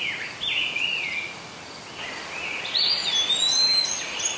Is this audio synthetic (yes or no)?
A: no